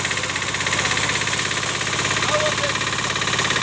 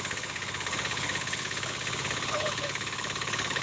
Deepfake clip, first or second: second